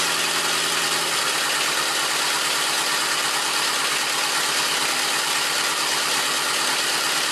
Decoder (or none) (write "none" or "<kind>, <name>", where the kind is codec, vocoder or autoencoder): none